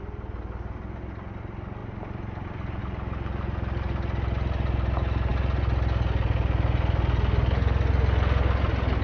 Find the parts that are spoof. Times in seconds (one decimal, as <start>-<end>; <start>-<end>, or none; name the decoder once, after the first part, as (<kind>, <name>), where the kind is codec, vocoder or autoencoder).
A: none